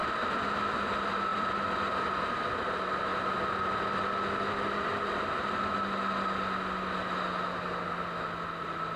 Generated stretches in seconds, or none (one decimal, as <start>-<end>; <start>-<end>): 1.3-2.0